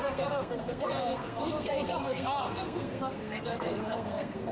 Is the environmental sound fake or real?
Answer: fake